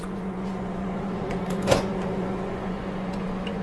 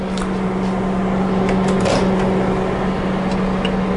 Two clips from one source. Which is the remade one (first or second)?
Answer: first